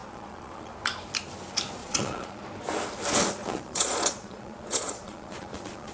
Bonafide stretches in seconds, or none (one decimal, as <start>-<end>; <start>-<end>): 0.7-1.8; 2.4-3.4